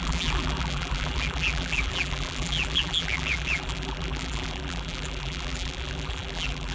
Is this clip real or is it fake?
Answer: fake